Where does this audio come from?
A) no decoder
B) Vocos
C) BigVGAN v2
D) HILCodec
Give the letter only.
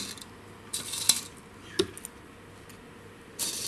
A